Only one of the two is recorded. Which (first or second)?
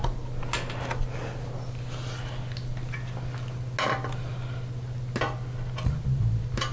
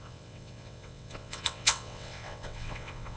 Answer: first